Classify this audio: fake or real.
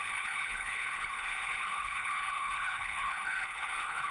fake